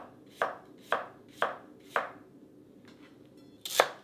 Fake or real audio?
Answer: real